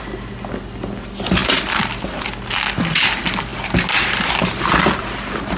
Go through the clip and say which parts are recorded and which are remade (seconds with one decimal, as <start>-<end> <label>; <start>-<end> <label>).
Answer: 0.0-5.6 recorded